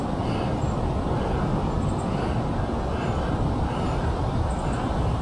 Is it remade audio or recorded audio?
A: recorded